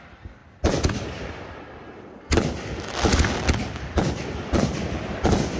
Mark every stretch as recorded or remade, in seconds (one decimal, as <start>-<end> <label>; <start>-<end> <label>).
0.0-5.6 recorded